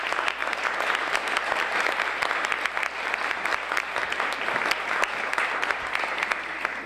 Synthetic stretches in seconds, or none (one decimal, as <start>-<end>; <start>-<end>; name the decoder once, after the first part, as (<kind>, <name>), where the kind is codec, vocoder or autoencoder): none